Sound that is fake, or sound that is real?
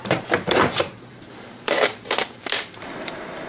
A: fake